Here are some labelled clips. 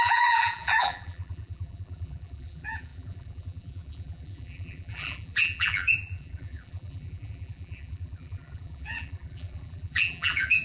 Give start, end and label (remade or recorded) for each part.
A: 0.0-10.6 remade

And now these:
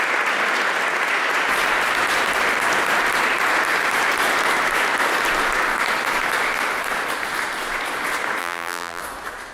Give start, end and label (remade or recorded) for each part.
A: 0.0-8.4 recorded; 8.4-9.0 remade; 9.0-9.5 recorded

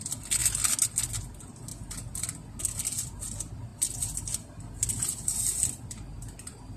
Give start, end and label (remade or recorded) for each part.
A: 0.0-6.8 recorded

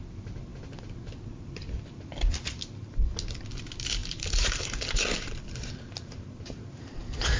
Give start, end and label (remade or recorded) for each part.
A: 0.0-4.0 recorded; 4.0-7.0 remade; 7.0-7.4 recorded

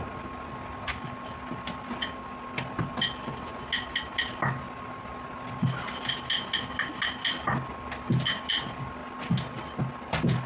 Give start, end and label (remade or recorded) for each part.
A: 0.0-3.5 remade; 3.5-7.3 recorded; 7.3-9.0 remade; 9.0-9.9 recorded; 9.9-10.5 remade